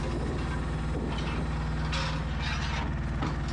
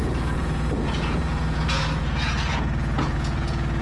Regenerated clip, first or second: second